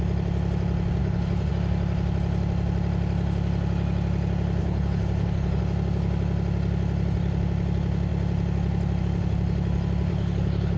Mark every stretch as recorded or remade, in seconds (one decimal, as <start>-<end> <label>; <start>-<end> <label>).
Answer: 0.0-1.0 recorded; 1.0-1.5 remade; 1.5-4.6 recorded; 4.6-5.6 remade; 5.6-10.1 recorded; 10.1-10.8 remade